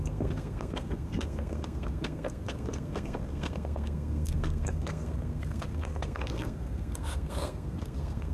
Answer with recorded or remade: remade